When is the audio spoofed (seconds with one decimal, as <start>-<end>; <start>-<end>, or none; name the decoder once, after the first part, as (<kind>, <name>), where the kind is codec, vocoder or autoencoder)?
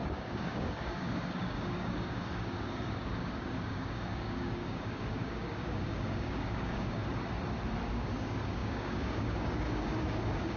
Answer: 0.0-7.0 (codec, DAC); 7.9-10.6